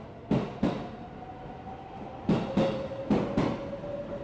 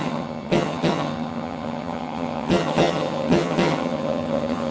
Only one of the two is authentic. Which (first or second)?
first